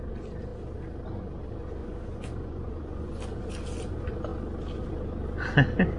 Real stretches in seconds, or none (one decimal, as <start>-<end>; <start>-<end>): 0.0-1.8; 3.2-6.0